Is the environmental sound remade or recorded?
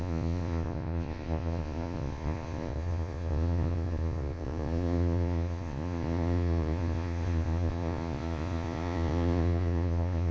remade